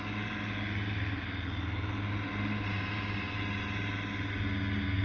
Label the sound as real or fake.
real